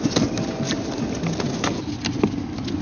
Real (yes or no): yes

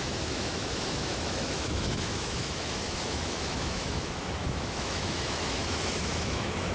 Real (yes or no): no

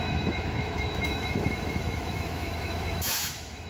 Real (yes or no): no